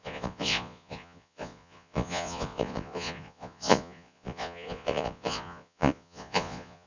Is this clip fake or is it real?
fake